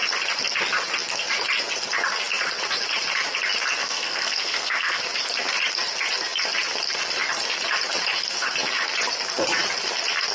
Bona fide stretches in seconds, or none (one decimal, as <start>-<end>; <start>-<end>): 0.0-3.8; 5.0-10.3